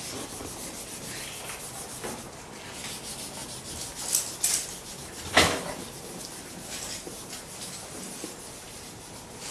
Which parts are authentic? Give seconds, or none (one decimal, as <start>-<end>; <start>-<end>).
0.0-9.5